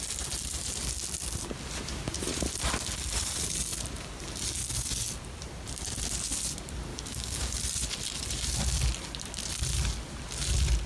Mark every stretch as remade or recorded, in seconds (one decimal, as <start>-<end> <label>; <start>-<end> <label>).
0.0-6.9 recorded; 6.9-7.6 remade; 7.6-10.9 recorded